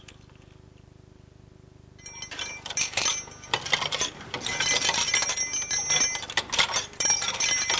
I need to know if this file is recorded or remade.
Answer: recorded